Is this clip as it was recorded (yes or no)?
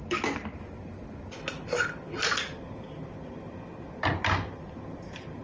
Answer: yes